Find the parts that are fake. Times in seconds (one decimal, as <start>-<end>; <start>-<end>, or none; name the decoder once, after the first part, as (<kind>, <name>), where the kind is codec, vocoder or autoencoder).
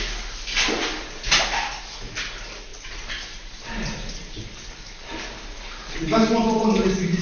2.7-7.2 (vocoder, BigVGAN v2)